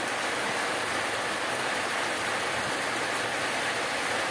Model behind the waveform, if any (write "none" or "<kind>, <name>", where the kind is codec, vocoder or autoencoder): none